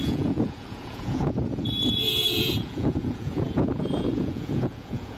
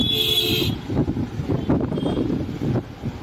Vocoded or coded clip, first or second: first